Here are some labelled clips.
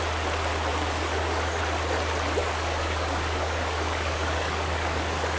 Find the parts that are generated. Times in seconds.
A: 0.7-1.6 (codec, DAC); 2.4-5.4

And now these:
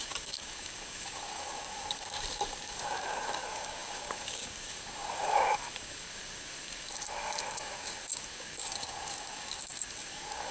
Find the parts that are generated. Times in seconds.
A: 0.0-10.5 (codec, DAC)

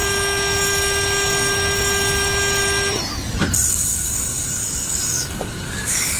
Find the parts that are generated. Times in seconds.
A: 3.7-6.2 (codec, DAC)